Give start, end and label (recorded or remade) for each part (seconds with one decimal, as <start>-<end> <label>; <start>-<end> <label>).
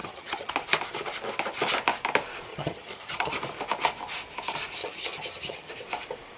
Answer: 0.0-0.5 remade; 0.5-2.5 recorded; 2.5-3.3 remade; 3.3-4.8 recorded; 4.8-5.7 remade; 5.7-6.4 recorded